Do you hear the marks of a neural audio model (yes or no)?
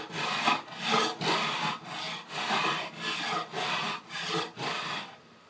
no